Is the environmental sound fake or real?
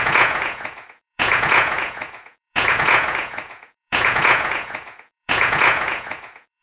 fake